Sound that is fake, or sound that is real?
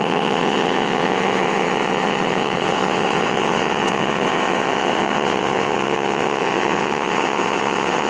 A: fake